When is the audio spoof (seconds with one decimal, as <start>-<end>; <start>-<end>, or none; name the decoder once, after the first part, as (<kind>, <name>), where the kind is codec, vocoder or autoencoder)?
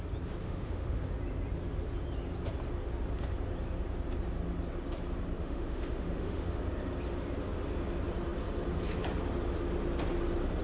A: 0.4-1.1 (autoencoder, DAC-VAE); 5.4-6.6